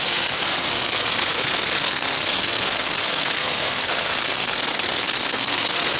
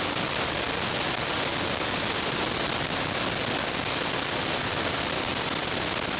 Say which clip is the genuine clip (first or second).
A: second